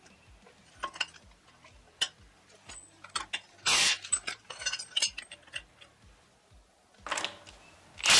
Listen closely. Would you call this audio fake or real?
real